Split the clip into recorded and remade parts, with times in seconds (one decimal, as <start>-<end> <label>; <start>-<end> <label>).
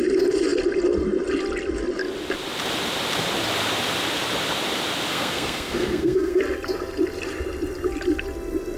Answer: 0.0-5.1 recorded; 5.1-6.4 remade; 6.4-8.8 recorded